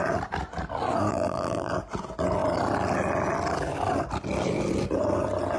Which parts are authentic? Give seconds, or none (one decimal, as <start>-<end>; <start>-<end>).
0.0-1.1; 1.7-5.6